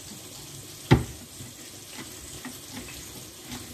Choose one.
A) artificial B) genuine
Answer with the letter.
B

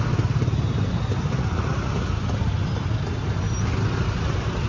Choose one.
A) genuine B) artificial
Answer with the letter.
A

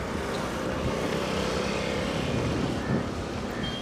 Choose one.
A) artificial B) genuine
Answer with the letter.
B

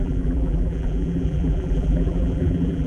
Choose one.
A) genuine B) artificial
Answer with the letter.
B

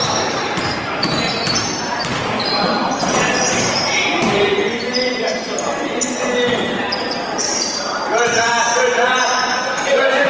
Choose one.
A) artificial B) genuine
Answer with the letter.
A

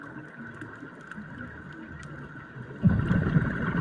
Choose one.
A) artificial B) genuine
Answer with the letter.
B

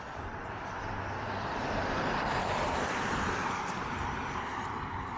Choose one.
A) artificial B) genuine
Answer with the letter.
A